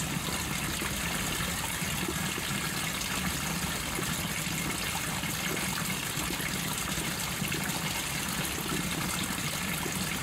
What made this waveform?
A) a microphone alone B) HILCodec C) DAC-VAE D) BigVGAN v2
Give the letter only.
A